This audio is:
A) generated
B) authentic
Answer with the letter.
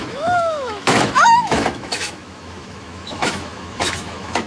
A